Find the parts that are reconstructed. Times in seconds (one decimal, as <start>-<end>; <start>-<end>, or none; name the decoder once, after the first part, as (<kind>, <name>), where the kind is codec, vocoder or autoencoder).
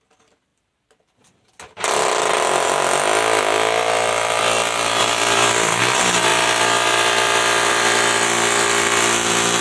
3.8-4.4 (vocoder, BigVGAN v2); 5.0-5.8